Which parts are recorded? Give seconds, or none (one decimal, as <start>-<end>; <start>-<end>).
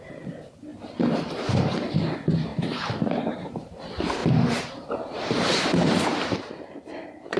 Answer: 0.0-0.7; 1.5-2.5; 3.4-4.2